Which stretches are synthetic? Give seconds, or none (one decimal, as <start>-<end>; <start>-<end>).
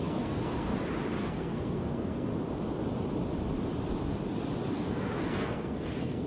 0.0-0.7; 1.2-2.3; 4.7-6.3